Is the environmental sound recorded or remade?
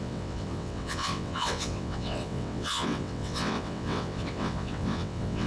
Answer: remade